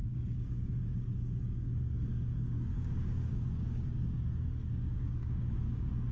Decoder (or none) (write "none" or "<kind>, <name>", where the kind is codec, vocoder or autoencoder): codec, DAC